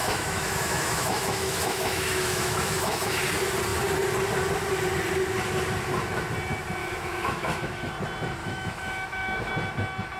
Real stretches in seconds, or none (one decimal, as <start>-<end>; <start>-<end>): 3.2-6.8; 7.9-8.4; 9.5-10.2